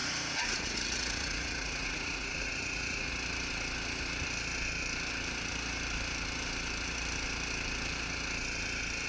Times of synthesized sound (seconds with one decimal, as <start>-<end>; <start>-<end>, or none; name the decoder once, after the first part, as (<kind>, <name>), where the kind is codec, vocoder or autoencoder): 0.0-3.1 (vocoder, Vocos)